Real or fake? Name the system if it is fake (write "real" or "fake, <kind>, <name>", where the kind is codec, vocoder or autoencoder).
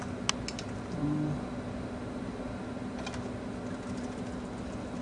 real